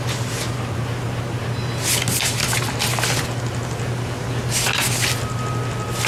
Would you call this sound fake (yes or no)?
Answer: no